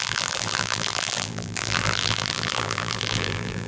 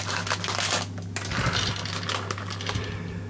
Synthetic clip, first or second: first